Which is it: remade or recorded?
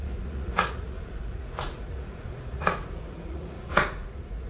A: remade